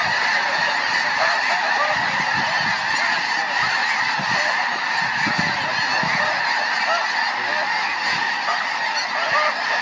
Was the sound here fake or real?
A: real